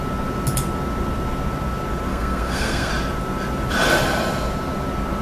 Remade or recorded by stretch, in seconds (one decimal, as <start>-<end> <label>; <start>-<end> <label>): 0.0-2.1 recorded; 2.1-2.9 remade; 2.9-5.2 recorded

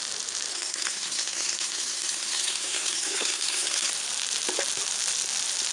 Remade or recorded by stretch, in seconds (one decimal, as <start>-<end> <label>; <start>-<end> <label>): 0.0-0.5 recorded; 0.5-3.9 remade; 3.9-5.7 recorded

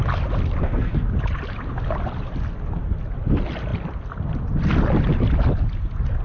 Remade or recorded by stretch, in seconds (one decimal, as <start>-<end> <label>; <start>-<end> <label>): 0.0-0.6 recorded; 0.6-1.1 remade; 1.1-6.2 recorded

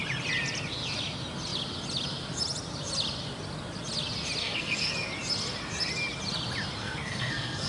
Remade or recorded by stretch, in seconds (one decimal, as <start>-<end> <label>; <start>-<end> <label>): 0.0-4.4 recorded; 4.4-4.9 remade; 4.9-6.8 recorded; 6.8-7.7 remade

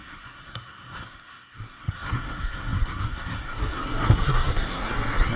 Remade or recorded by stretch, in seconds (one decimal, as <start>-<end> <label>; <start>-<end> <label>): 0.0-5.4 remade